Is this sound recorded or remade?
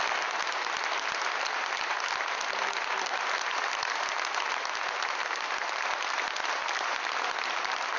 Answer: recorded